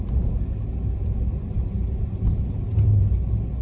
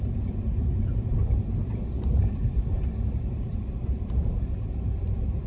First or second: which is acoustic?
first